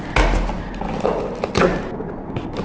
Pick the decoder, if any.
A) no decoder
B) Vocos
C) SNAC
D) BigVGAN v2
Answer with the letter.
A